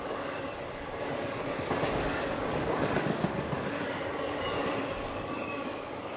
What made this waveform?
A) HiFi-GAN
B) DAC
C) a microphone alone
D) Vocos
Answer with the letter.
B